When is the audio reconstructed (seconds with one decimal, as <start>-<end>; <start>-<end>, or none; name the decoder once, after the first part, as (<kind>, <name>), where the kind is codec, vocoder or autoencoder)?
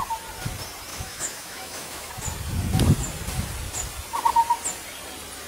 0.9-2.1 (autoencoder, DAC-VAE)